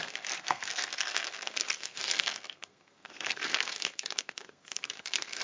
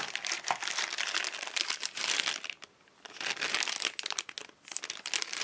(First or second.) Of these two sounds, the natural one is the second